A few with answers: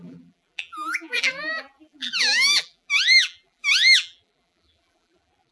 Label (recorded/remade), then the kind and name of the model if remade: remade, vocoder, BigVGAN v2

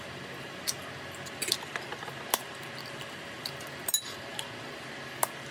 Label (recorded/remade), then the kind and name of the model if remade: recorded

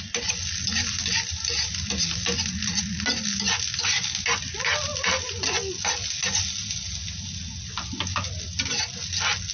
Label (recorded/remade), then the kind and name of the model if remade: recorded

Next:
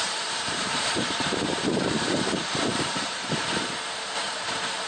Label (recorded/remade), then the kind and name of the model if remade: remade, vocoder, BigVGAN v2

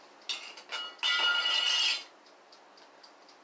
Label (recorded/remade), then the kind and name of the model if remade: recorded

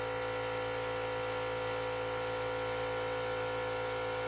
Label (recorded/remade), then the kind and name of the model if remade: recorded